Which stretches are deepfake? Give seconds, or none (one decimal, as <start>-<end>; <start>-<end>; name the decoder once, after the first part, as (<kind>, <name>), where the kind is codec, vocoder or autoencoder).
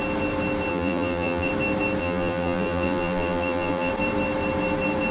0.7-1.5 (vocoder, BigVGAN v2); 2.0-3.9